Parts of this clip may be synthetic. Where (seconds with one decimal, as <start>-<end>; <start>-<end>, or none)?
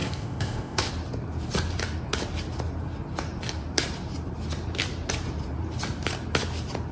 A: 0.0-0.9